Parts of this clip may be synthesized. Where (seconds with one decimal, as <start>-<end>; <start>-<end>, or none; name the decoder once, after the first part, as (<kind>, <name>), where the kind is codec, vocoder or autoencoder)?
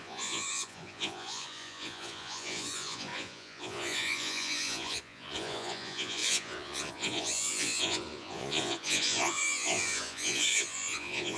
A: 0.0-11.4 (vocoder, Vocos)